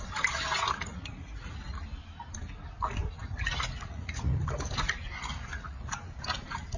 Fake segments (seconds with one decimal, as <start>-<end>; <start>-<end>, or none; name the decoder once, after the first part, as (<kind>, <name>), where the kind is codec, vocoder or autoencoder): 0.9-1.6 (vocoder, Vocos); 3.2-4.4; 5.3-5.9